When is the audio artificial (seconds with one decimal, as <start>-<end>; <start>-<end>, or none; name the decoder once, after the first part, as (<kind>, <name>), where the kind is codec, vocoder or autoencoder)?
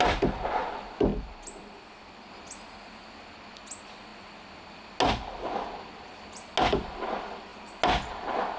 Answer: none